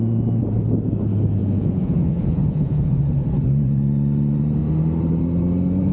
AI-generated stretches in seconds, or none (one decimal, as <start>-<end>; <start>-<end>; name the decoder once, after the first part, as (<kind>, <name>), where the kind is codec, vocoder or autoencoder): 1.4-3.0 (vocoder, Vocos)